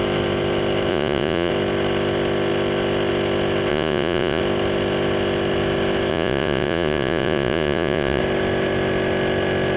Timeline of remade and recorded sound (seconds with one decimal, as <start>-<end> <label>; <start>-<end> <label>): 0.0-0.9 recorded; 0.9-1.5 remade; 1.5-3.7 recorded; 3.7-4.4 remade; 4.4-6.1 recorded; 6.1-8.2 remade; 8.2-9.8 recorded